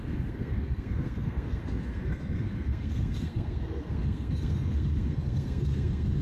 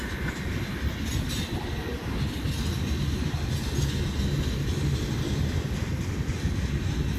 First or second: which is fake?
first